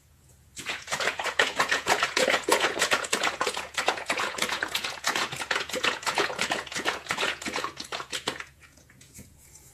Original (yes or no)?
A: no